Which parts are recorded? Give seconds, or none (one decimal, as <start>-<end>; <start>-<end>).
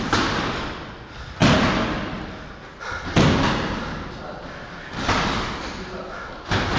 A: 0.0-6.8